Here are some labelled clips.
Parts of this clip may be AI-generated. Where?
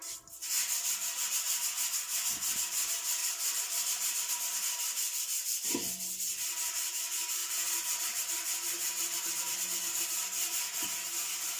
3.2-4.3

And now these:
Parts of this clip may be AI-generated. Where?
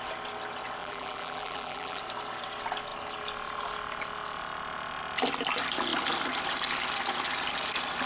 0.8-2.0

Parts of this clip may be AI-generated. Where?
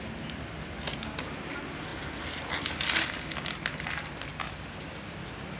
none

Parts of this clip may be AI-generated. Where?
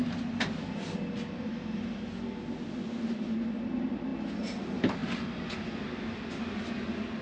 none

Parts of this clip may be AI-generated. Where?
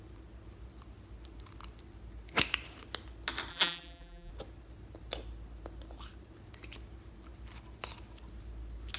3.5-4.3